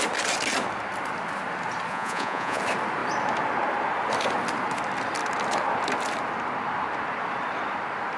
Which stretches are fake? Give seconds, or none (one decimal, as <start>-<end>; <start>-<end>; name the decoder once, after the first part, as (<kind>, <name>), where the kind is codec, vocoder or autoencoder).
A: 1.9-2.6 (vocoder, Vocos)